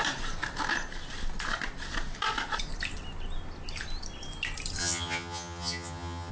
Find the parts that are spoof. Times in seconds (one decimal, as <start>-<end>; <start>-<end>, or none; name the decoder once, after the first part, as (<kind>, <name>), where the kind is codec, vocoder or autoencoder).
4.8-6.3 (vocoder, HiFi-GAN)